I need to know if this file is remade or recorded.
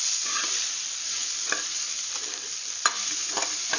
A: recorded